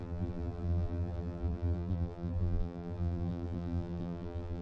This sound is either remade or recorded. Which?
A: remade